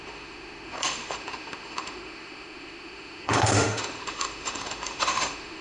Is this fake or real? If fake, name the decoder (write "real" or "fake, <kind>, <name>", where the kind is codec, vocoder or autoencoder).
fake, autoencoder, DAC-VAE